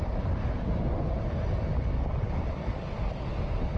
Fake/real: real